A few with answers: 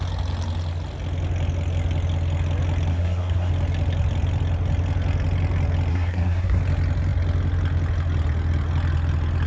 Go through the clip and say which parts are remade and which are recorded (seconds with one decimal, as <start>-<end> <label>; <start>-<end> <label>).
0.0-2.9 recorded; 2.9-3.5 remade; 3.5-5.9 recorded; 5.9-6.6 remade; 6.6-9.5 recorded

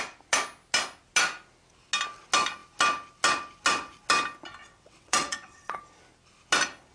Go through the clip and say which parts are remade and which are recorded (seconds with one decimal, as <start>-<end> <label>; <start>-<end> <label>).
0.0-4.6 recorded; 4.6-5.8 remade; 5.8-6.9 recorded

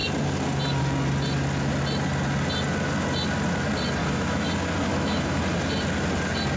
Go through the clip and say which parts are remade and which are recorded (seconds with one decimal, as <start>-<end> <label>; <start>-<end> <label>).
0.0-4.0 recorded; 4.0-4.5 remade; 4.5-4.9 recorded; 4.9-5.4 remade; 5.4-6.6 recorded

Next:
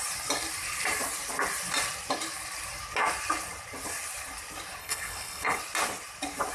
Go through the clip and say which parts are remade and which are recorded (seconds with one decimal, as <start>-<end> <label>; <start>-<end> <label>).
0.0-4.8 recorded; 4.8-5.6 remade; 5.6-6.5 recorded